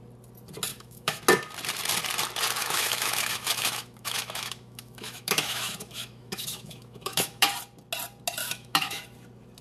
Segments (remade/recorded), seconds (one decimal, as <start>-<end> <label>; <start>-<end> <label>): 0.0-0.7 recorded; 0.7-1.2 remade; 1.2-2.6 recorded; 2.6-7.5 remade; 7.5-8.4 recorded; 8.4-9.0 remade; 9.0-9.6 recorded